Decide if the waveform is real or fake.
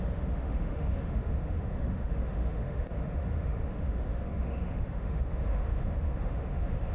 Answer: fake